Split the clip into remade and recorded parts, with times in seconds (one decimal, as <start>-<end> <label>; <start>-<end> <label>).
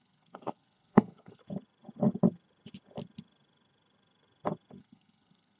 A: 0.0-1.4 remade; 1.4-4.8 recorded; 4.8-5.6 remade